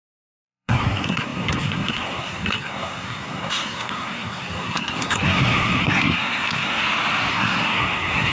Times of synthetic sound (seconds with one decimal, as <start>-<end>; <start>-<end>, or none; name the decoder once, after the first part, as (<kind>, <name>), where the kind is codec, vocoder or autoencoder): 0.0-6.8 (codec, SNAC); 7.3-8.3